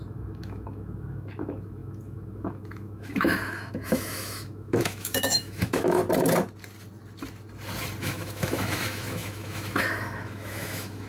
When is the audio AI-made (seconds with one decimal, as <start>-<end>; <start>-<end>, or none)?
0.0-6.0; 8.0-11.1

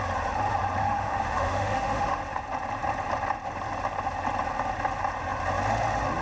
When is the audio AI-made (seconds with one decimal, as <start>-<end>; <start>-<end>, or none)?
0.8-2.2

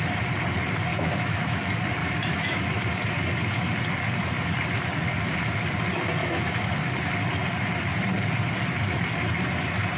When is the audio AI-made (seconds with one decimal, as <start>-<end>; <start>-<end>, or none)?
0.9-1.6; 2.0-2.6; 6.2-6.7

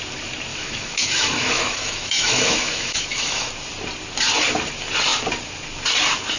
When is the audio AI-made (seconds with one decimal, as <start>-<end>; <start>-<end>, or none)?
0.5-3.5

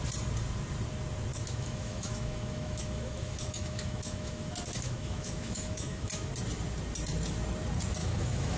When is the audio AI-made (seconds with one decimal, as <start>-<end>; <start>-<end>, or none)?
1.3-6.3; 8.0-8.6

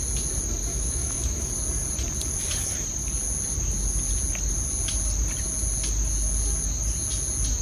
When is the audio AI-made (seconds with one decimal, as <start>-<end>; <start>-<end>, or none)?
0.7-1.5